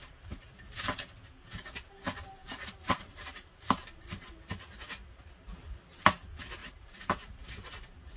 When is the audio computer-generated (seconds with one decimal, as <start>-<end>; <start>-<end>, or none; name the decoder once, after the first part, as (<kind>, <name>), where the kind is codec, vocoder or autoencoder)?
0.0-0.6 (vocoder, BigVGAN v2); 2.4-5.5; 6.6-8.2

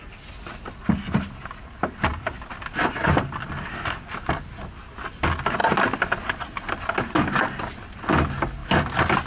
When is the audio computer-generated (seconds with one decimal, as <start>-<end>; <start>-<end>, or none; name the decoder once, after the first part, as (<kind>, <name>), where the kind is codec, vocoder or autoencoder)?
2.1-4.1 (vocoder, BigVGAN v2)

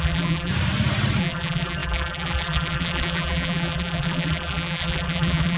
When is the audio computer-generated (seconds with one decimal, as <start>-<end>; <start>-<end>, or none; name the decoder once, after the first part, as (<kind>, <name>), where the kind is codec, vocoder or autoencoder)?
0.0-0.5 (vocoder, BigVGAN v2); 1.2-5.6

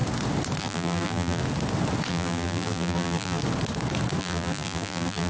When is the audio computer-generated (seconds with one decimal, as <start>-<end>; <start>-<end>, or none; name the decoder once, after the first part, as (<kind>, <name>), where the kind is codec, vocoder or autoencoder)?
0.6-1.4 (vocoder, BigVGAN v2); 2.1-3.4; 4.2-5.3

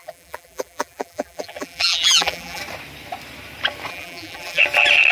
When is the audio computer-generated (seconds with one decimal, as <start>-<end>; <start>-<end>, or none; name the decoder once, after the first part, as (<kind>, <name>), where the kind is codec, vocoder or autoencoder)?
0.0-2.6 (vocoder, BigVGAN v2); 3.9-4.6

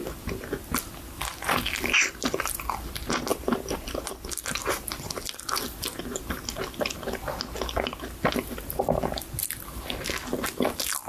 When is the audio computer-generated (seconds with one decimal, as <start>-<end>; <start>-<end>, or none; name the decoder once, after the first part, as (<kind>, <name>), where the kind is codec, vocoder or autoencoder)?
3.3-4.0 (vocoder, BigVGAN v2); 4.6-5.2